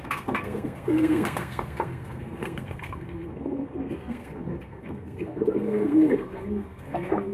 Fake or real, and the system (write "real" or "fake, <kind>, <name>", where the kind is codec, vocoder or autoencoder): fake, codec, SNAC